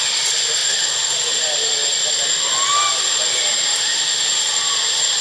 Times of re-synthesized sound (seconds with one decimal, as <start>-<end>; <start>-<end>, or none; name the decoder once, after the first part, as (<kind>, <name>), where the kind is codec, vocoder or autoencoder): none